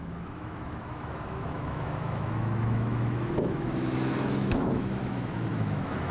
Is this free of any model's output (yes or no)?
no